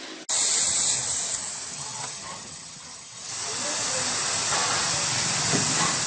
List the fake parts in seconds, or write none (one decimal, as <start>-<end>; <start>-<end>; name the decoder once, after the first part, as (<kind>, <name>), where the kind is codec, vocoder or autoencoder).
1.7-3.3 (vocoder, HiFi-GAN)